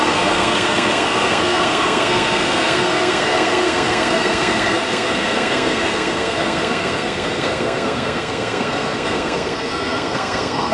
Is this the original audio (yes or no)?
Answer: no